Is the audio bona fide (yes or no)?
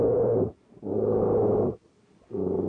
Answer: yes